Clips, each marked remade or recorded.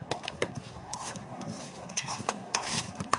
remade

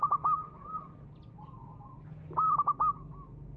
recorded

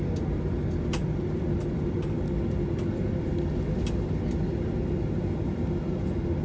recorded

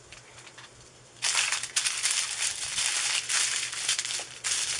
recorded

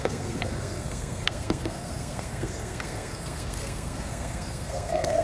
remade